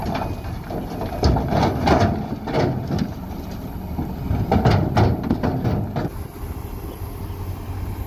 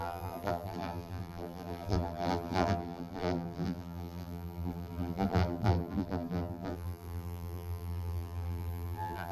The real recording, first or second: first